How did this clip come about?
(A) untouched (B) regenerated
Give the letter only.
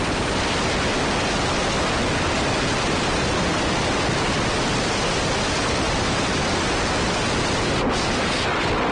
A